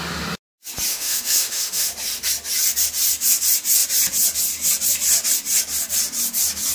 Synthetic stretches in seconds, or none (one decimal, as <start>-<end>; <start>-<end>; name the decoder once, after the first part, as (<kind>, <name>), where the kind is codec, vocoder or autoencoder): 0.9-1.9 (autoencoder, DAC-VAE)

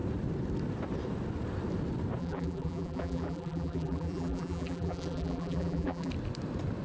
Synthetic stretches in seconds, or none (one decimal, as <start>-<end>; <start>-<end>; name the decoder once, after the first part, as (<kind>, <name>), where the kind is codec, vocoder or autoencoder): 2.2-6.1 (vocoder, BigVGAN v2)

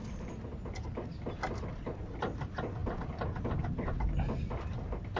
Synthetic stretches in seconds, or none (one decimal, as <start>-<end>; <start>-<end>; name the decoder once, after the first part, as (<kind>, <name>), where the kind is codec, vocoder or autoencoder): none

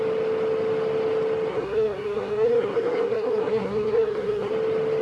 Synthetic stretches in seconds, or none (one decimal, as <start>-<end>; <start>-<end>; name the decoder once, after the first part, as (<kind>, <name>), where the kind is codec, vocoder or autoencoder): 1.5-4.5 (codec, SNAC)